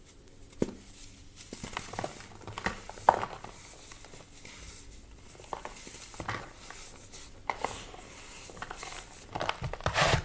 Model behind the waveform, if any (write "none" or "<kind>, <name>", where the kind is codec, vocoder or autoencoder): none